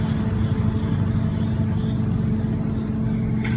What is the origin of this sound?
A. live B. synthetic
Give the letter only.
A